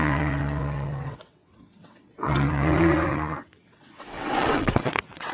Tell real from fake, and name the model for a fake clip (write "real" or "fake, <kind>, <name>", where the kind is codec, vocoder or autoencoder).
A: fake, vocoder, WaveNeXt